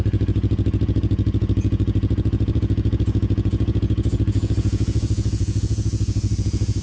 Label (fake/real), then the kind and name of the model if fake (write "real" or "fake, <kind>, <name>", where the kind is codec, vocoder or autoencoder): fake, vocoder, Vocos